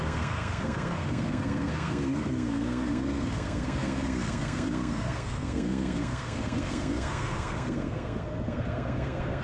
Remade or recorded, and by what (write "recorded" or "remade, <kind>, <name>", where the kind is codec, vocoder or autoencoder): remade, codec, SNAC